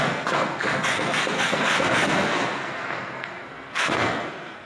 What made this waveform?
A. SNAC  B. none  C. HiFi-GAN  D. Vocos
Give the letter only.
A